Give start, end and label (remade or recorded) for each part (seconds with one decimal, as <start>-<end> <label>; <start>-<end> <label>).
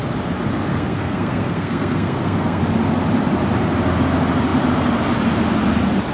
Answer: 0.0-0.7 recorded; 0.7-2.6 remade; 2.6-6.1 recorded